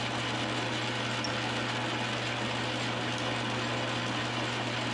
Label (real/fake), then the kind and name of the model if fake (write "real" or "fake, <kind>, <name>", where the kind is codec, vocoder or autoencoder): real